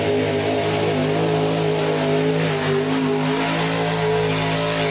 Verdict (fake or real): real